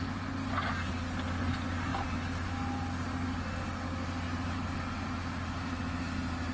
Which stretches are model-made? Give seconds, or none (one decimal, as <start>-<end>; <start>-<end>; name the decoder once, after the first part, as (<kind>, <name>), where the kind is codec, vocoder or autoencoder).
none